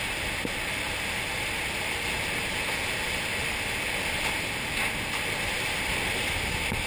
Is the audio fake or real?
real